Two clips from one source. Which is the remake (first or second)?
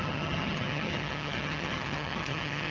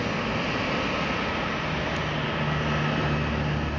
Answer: first